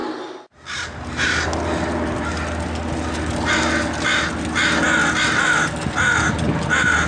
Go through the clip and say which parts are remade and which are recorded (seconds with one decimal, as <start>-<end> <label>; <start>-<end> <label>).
0.0-7.1 recorded